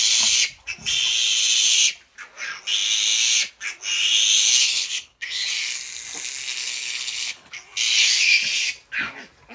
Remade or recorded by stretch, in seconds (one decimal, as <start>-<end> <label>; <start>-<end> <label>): 0.0-4.6 recorded; 4.6-5.5 remade; 5.5-6.6 recorded; 6.6-7.5 remade; 7.5-9.5 recorded